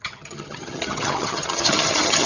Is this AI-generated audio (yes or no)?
yes